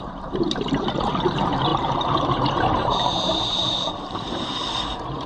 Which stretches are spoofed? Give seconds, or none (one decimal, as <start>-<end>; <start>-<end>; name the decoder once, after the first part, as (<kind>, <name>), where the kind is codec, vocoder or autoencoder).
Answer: 0.0-5.3 (vocoder, BigVGAN v2)